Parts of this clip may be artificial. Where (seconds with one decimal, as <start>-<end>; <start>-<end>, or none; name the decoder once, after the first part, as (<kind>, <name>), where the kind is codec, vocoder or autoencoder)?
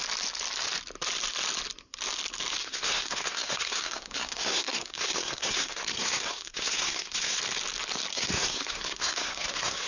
2.6-7.4 (codec, SNAC); 8.1-9.9